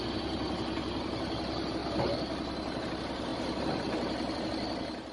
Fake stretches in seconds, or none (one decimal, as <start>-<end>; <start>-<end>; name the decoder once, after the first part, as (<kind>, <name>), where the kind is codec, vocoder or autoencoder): 0.0-1.8 (vocoder, BigVGAN v2); 2.8-3.3; 4.4-5.1